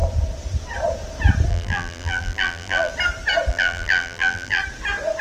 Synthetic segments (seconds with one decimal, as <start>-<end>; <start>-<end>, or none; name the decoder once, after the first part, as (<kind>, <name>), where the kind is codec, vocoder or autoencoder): 1.5-2.9 (vocoder, BigVGAN v2); 3.5-4.6